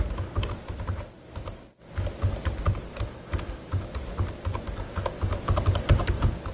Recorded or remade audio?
recorded